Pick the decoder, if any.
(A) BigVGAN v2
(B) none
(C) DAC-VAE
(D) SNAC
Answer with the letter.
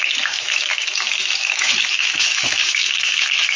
C